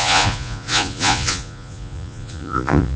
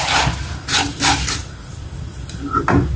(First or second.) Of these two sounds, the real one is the second